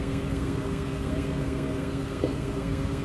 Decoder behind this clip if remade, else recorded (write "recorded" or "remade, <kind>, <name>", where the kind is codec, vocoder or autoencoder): remade, codec, SNAC